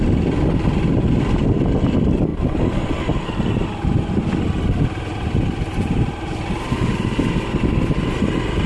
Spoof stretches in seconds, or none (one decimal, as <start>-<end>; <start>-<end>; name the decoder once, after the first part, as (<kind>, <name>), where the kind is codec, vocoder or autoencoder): none